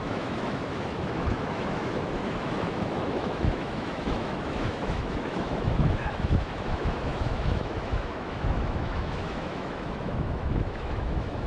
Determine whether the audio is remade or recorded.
remade